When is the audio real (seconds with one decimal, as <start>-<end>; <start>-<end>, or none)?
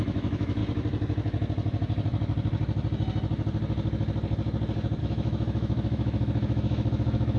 0.6-5.0